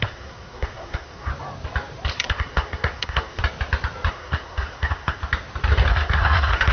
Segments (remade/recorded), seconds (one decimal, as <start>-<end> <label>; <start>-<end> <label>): 0.0-1.3 remade; 1.3-2.1 recorded; 2.1-3.4 remade; 3.4-4.1 recorded; 4.1-5.2 remade; 5.2-5.9 recorded; 5.9-6.7 remade